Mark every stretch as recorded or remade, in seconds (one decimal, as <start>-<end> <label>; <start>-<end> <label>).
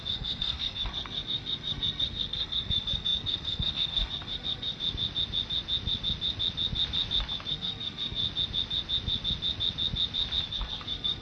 0.0-4.8 remade; 4.8-7.5 recorded; 7.5-8.2 remade; 8.2-10.5 recorded; 10.5-11.2 remade